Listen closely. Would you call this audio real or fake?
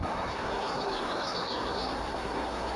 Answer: fake